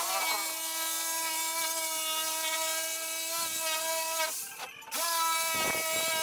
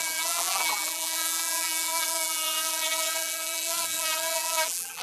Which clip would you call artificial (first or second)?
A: second